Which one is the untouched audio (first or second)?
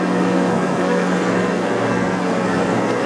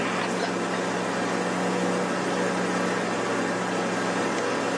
second